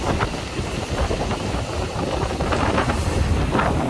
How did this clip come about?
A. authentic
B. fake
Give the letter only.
A